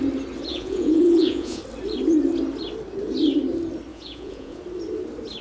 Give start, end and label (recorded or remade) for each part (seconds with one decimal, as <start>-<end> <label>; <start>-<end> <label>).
0.0-0.5 recorded; 0.5-1.6 remade; 1.6-3.9 recorded; 3.9-4.6 remade; 4.6-5.4 recorded

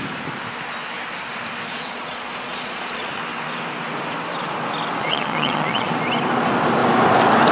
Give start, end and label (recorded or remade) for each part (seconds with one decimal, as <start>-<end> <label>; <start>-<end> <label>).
0.0-1.7 recorded; 1.7-3.2 remade; 3.2-5.0 recorded; 5.0-5.9 remade; 5.9-7.5 recorded

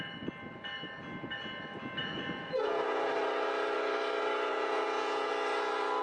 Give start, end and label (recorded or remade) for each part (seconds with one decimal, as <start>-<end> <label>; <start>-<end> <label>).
0.0-2.0 recorded; 2.0-3.1 remade; 3.1-4.5 recorded; 4.5-5.3 remade; 5.3-6.0 recorded

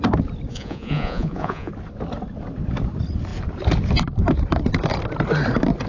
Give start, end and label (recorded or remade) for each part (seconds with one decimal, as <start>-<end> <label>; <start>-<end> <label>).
0.0-0.5 recorded; 0.5-1.7 remade; 1.7-5.9 recorded

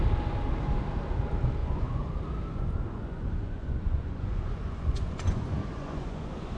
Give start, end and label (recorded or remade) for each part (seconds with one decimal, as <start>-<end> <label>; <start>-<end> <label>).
0.0-1.6 recorded; 1.6-2.1 remade; 2.1-2.5 recorded; 2.5-6.6 remade